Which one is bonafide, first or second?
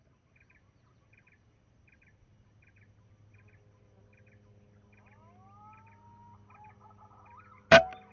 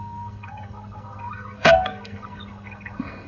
first